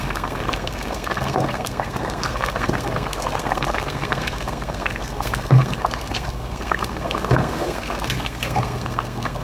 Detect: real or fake fake